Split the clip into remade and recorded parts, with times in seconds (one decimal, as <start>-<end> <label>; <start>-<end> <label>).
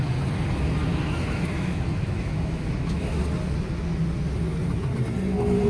0.0-0.9 recorded; 0.9-3.2 remade; 3.2-5.7 recorded